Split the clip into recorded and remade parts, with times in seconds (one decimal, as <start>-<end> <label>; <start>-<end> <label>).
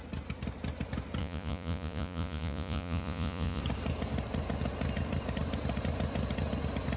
0.0-1.2 recorded; 1.2-3.6 remade; 3.6-7.0 recorded